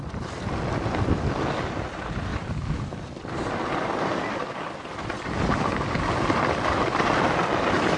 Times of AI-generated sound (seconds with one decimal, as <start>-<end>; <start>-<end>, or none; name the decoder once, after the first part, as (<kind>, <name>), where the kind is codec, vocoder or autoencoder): none